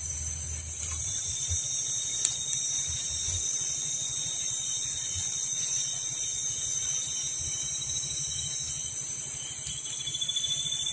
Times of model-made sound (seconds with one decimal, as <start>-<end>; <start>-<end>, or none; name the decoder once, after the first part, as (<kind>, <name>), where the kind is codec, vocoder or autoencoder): 3.2-6.2 (vocoder, Vocos)